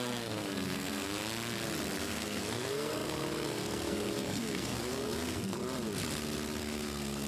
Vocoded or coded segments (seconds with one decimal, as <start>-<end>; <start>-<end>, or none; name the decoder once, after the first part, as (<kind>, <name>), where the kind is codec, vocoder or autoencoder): 0.0-1.2 (codec, SNAC); 2.0-5.6; 6.6-7.3